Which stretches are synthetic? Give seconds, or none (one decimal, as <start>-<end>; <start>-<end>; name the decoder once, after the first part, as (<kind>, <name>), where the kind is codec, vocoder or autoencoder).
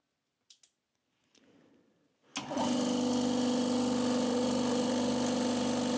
none